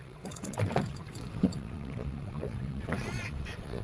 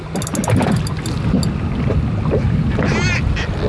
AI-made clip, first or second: first